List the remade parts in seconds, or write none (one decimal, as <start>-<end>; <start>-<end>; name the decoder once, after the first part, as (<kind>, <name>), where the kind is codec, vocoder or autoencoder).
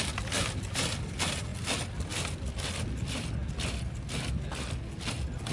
none